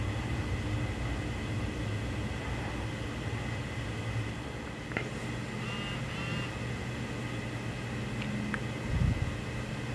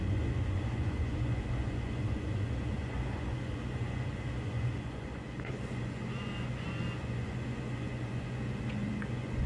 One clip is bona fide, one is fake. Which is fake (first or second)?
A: second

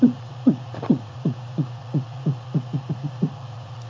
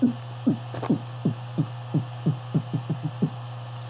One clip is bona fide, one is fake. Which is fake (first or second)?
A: first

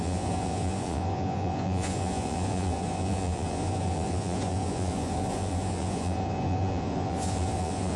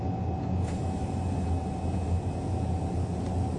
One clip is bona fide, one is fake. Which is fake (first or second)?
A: first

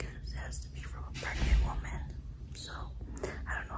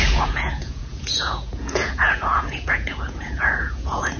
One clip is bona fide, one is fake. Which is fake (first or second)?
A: second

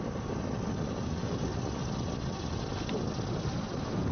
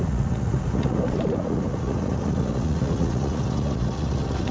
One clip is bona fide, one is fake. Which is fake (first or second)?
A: second